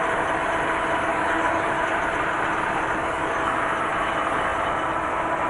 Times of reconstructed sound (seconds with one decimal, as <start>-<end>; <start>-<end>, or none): 1.1-1.7; 3.0-3.6